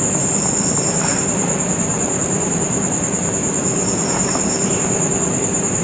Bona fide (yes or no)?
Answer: no